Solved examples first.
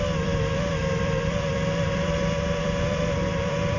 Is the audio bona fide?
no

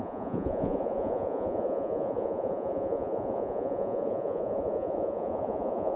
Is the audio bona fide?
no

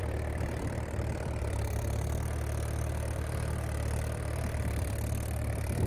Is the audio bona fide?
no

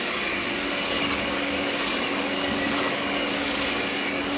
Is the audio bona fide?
no